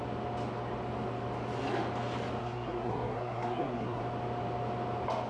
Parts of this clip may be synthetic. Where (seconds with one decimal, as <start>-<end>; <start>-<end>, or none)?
2.4-4.0